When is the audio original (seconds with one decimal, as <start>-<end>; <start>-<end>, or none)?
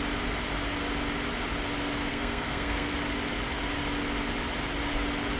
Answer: 0.0-2.1; 2.9-5.4